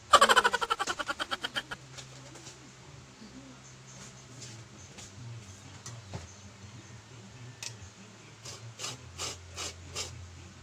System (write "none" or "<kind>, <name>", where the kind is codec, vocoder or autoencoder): none